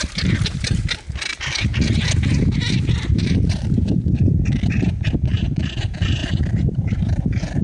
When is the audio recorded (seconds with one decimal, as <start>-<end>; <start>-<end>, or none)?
1.7-2.7